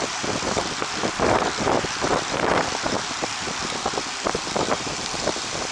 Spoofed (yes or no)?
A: yes